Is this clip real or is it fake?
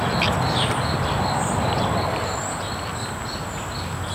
real